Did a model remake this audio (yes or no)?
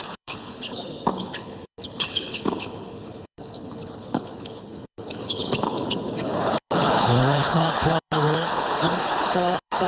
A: yes